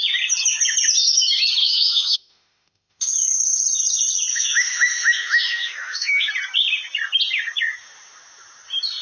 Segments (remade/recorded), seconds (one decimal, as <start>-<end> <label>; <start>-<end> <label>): 0.0-1.6 recorded; 1.6-3.1 remade; 3.1-4.3 recorded; 4.3-6.3 remade; 6.3-9.0 recorded